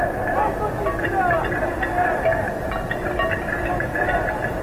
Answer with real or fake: real